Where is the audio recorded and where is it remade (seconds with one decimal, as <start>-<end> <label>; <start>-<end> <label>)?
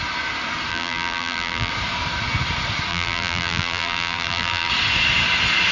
0.0-0.7 recorded; 0.7-1.7 remade; 1.7-2.9 recorded; 2.9-4.7 remade; 4.7-5.7 recorded